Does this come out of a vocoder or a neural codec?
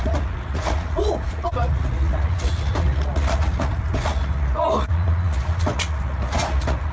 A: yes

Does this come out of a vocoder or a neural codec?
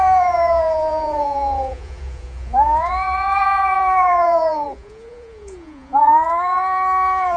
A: yes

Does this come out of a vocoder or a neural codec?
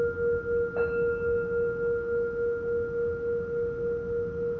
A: no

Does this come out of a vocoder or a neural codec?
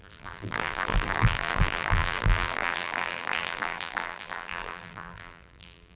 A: yes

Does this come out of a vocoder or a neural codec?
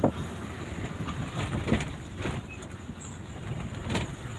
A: yes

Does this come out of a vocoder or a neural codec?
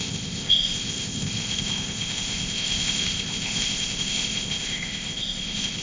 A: yes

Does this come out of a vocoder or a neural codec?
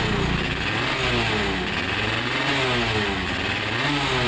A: no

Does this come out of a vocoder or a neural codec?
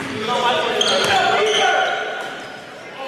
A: no